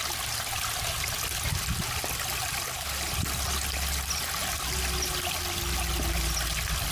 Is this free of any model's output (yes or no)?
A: yes